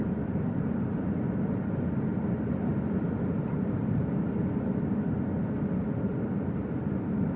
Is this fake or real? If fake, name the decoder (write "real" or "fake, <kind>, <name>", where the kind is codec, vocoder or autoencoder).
real